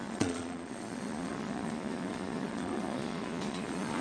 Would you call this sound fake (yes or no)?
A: yes